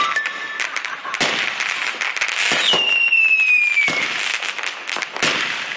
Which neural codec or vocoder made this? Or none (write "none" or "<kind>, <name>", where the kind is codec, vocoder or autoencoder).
none